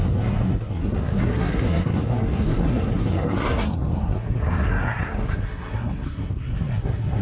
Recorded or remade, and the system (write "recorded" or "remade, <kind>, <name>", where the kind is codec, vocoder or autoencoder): remade, codec, SNAC